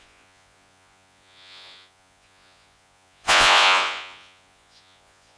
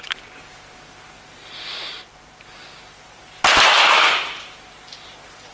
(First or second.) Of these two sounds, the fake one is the first